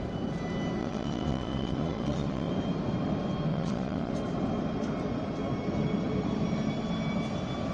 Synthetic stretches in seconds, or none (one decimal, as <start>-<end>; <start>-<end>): 0.8-2.5; 3.5-4.1